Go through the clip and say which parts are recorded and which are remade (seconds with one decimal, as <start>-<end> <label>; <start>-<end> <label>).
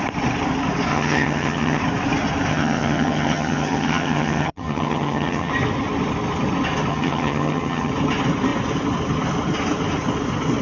0.0-0.9 recorded; 0.9-1.8 remade; 1.8-2.5 recorded; 2.5-5.5 remade; 5.5-6.9 recorded; 6.9-7.9 remade; 7.9-10.6 recorded